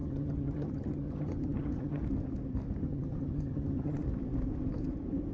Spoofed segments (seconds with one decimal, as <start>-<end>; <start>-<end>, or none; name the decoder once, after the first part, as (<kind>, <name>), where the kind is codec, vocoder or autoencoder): 0.0-2.0 (vocoder, HiFi-GAN); 2.8-4.0